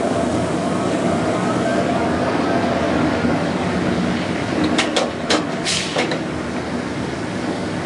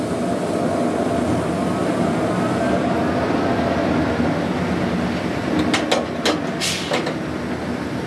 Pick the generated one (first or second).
first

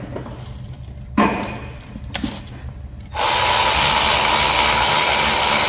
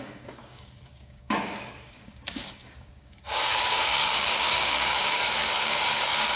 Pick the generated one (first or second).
second